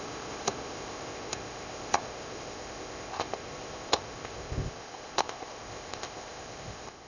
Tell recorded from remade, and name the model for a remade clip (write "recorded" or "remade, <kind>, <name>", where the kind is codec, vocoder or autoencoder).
remade, codec, ZipCodec